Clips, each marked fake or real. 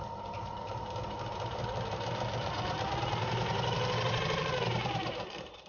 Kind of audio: fake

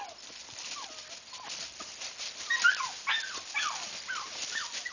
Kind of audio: real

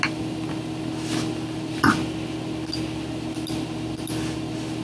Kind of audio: real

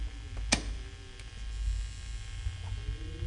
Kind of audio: real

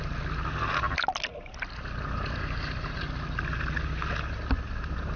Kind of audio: real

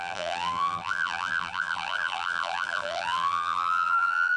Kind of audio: fake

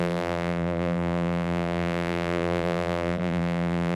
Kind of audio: fake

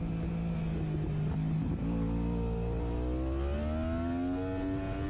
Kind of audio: real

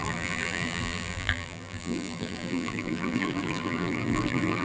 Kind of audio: fake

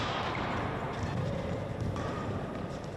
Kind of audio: fake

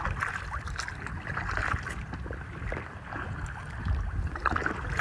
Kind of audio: real